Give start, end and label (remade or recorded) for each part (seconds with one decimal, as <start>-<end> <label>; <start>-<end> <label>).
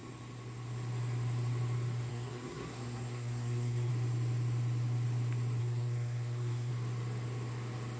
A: 0.0-2.1 recorded; 2.1-3.9 remade; 3.9-5.6 recorded; 5.6-6.7 remade; 6.7-8.0 recorded